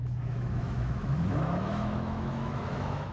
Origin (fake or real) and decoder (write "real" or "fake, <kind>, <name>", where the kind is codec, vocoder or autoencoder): fake, autoencoder, DAC-VAE